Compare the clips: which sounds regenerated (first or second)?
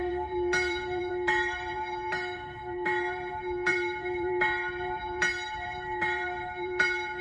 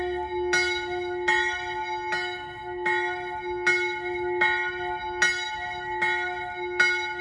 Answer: first